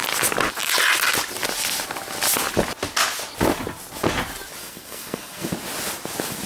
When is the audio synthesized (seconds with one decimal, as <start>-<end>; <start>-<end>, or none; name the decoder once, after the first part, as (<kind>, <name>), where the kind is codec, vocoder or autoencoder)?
4.6-5.5 (codec, SNAC)